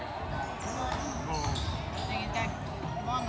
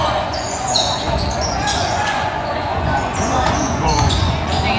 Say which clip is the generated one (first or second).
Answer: second